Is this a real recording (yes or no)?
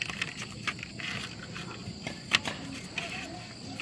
yes